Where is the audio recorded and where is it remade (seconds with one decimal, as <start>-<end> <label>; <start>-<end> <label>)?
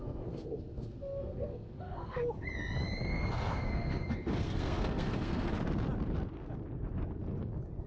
0.0-2.2 remade; 2.2-3.1 recorded; 3.1-5.5 remade; 5.5-7.9 recorded